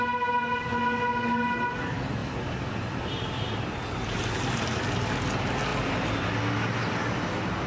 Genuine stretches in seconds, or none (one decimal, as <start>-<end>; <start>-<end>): 0.0-2.2; 4.8-7.7